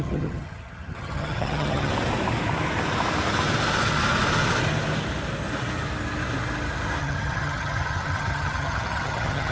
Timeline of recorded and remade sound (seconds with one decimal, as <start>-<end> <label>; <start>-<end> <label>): 0.0-1.9 remade; 1.9-7.0 recorded; 7.0-9.5 remade